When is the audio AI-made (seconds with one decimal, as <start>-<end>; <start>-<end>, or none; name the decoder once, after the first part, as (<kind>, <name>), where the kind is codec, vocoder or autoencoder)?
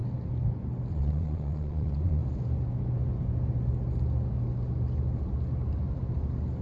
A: 0.9-2.2 (vocoder, Vocos)